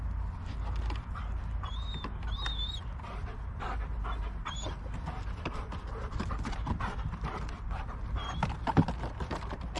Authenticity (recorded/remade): recorded